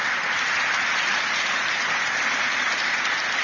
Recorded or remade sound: recorded